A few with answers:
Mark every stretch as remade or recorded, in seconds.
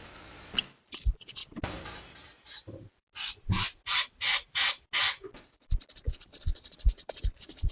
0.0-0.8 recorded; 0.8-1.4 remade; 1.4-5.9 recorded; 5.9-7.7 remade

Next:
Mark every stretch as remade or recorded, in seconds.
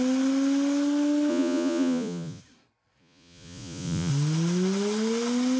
0.0-1.3 recorded; 1.3-2.4 remade; 2.4-3.0 recorded; 3.0-4.1 remade; 4.1-5.6 recorded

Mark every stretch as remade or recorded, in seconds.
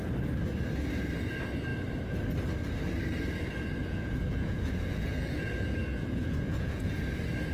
0.0-3.8 recorded; 3.8-5.5 remade; 5.5-5.9 recorded; 5.9-6.9 remade; 6.9-7.5 recorded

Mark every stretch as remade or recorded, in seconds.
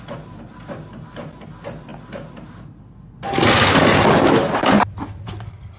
0.0-5.8 recorded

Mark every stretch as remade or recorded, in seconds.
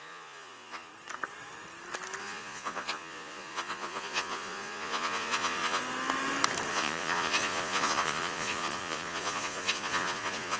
0.0-0.9 remade; 0.9-2.2 recorded; 2.2-5.8 remade; 5.8-6.7 recorded; 6.7-10.6 remade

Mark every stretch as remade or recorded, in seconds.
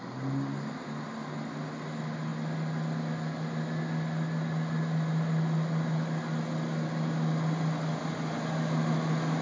0.0-9.4 recorded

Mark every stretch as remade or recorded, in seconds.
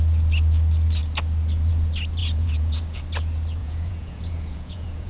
0.0-2.2 recorded; 2.2-3.0 remade; 3.0-3.6 recorded; 3.6-5.1 remade